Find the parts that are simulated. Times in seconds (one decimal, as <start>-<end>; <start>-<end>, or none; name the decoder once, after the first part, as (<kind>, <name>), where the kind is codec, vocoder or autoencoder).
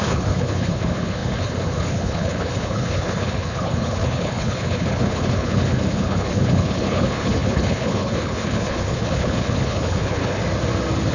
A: 0.0-10.4 (codec, HILCodec)